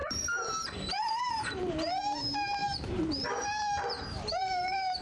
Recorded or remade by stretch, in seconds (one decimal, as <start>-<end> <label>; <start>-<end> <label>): 0.0-1.9 remade; 1.9-2.6 recorded; 2.6-5.0 remade